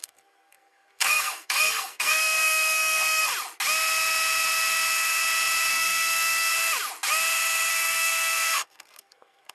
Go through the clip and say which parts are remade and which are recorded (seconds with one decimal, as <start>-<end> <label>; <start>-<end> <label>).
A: 0.0-3.3 remade; 3.3-5.7 recorded; 5.7-6.5 remade; 6.5-7.7 recorded; 7.7-9.5 remade